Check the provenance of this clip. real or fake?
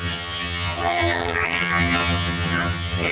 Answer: fake